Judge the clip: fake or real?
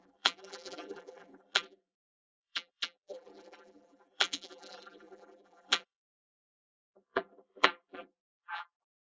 fake